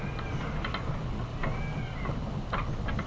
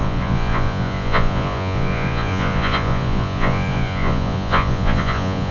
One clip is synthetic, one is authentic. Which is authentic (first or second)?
first